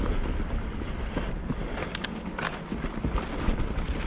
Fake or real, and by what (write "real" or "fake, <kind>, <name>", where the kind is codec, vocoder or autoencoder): real